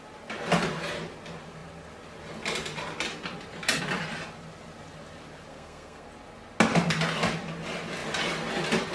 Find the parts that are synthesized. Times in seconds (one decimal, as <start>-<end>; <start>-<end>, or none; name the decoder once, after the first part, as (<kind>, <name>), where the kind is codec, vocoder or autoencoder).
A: 5.5-6.1 (codec, SNAC)